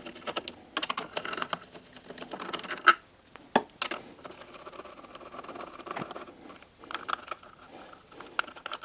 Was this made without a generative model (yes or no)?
yes